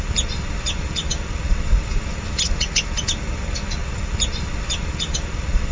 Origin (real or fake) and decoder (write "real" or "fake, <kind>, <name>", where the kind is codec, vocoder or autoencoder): real